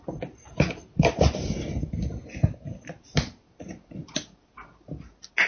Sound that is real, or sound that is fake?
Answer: real